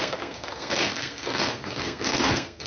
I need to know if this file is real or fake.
fake